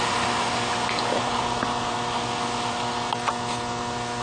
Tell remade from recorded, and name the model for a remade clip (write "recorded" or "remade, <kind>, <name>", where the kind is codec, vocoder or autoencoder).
recorded